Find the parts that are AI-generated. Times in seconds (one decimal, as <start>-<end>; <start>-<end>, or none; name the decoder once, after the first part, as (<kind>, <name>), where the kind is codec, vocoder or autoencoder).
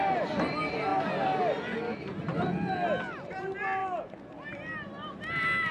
none